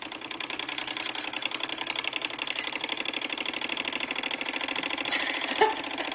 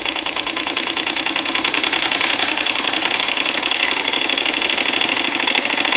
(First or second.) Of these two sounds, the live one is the first